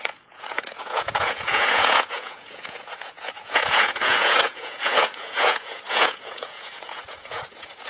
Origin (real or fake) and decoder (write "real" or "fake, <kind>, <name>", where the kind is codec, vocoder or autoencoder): fake, vocoder, Vocos